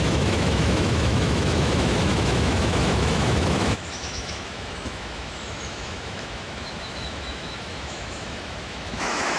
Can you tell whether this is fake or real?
fake